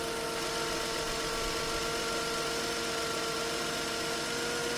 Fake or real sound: real